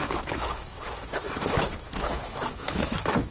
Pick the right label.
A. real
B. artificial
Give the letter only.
B